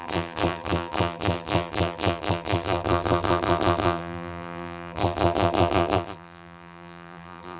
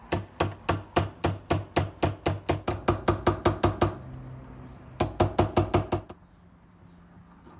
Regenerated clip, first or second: first